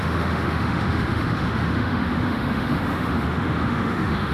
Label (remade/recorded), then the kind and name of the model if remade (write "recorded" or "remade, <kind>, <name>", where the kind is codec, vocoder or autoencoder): remade, autoencoder, DAC-VAE